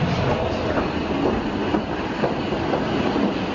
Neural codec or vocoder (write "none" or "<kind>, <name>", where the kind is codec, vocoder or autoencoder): none